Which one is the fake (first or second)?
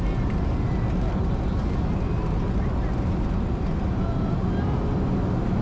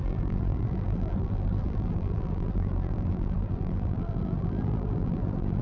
second